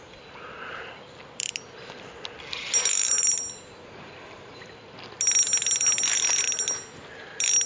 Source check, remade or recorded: recorded